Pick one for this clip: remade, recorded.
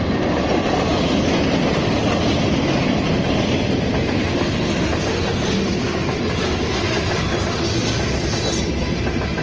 recorded